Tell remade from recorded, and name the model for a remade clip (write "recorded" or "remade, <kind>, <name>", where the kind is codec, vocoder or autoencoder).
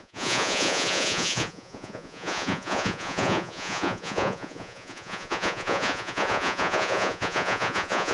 remade, vocoder, Vocos